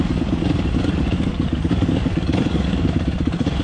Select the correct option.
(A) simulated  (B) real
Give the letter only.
A